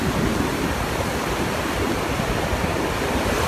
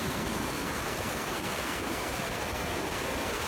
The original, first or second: first